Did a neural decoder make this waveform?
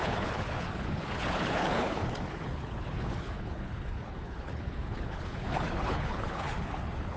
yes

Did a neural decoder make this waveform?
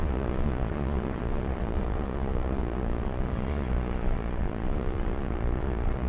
yes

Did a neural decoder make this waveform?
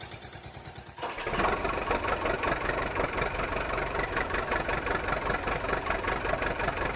yes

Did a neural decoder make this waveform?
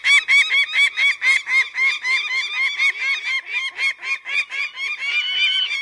no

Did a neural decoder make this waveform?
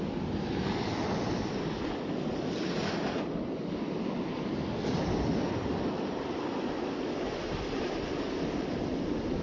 no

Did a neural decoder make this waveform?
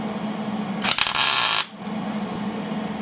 no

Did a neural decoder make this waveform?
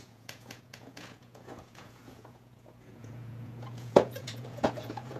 yes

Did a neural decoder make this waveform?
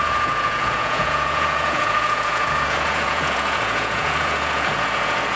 yes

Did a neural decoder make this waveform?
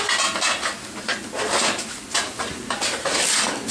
no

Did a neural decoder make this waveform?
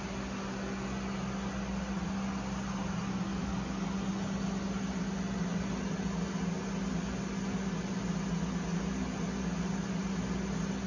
no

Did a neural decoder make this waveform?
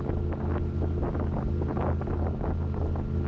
no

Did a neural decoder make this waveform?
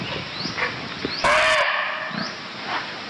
no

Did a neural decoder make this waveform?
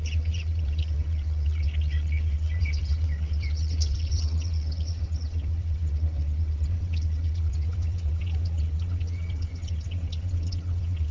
yes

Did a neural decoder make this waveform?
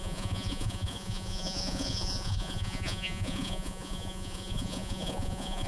yes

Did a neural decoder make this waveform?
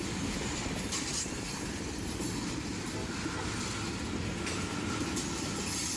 no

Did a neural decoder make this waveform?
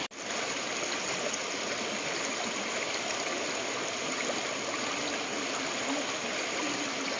no